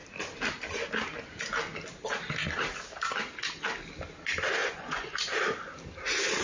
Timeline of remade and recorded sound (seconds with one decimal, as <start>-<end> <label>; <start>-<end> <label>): 0.0-4.6 recorded; 4.6-5.2 remade; 5.2-6.4 recorded